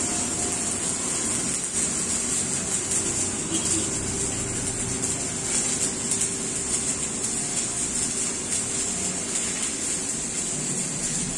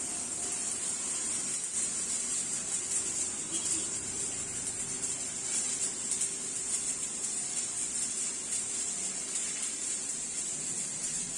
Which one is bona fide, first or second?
first